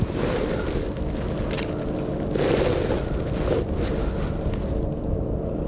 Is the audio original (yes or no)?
yes